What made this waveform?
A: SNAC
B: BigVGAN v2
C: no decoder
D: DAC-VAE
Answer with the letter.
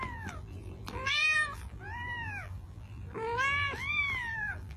B